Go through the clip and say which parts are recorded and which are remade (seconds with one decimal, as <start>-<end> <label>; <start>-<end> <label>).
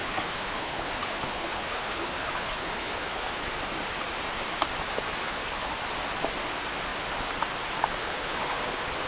0.0-3.3 remade; 3.3-5.2 recorded; 5.2-5.7 remade; 5.7-8.0 recorded; 8.0-8.6 remade; 8.6-9.1 recorded